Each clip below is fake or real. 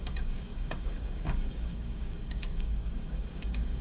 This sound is fake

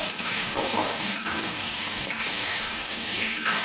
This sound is fake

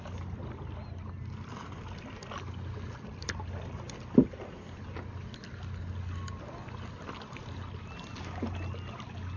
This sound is real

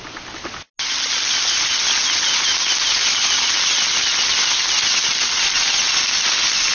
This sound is real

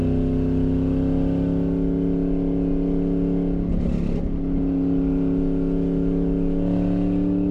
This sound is real